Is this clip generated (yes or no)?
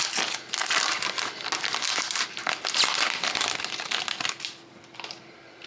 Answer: no